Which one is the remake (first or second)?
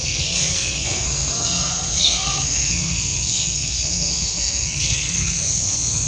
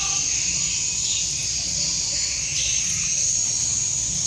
first